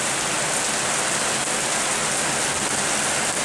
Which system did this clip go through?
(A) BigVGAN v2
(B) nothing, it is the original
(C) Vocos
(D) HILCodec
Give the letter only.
B